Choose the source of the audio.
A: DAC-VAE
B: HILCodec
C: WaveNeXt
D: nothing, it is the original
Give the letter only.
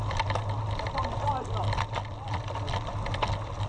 D